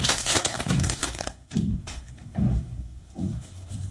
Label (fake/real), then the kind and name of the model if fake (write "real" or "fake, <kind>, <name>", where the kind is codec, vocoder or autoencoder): fake, codec, SNAC